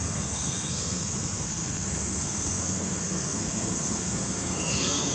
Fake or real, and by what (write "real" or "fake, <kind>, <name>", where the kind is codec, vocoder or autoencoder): fake, codec, SNAC